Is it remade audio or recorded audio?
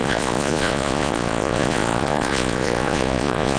remade